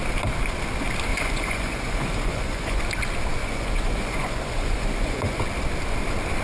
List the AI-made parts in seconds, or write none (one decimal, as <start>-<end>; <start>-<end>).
1.1-2.8; 3.4-5.4